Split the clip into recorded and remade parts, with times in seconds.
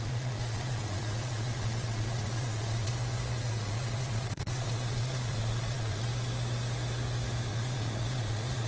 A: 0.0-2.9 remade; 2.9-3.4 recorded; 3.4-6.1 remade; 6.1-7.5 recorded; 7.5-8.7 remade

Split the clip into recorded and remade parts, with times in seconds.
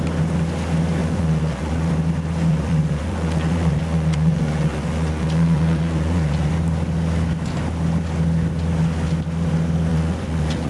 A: 0.0-1.0 recorded; 1.0-1.9 remade; 1.9-2.5 recorded; 2.5-6.5 remade; 6.5-9.9 recorded; 9.9-10.7 remade